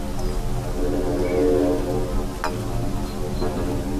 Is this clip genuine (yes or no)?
yes